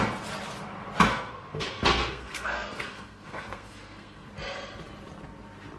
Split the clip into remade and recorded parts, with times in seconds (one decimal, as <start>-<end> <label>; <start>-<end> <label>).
0.0-1.1 recorded; 1.1-4.3 remade; 4.3-5.8 recorded